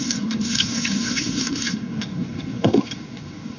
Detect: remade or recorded remade